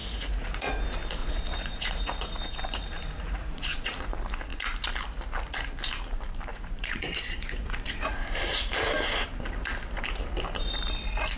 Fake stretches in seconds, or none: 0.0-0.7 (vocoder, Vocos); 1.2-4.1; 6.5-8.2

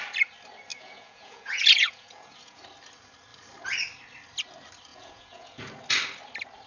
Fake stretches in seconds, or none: 0.7-2.6 (vocoder, Vocos); 4.9-5.6

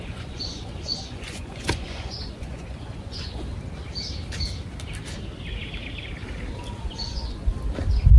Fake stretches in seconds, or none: 0.0-3.5 (vocoder, Vocos); 6.8-7.5

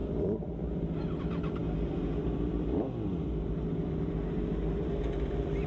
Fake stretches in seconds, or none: 0.0-1.6 (vocoder, BigVGAN v2); 5.0-5.7